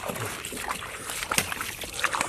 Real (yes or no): no